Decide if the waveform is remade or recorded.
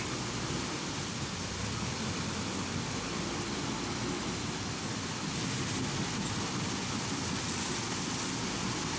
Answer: recorded